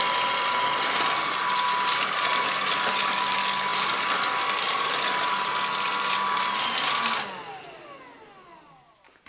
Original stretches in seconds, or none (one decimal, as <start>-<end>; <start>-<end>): 0.0-9.3